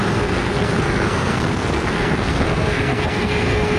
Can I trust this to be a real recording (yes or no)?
no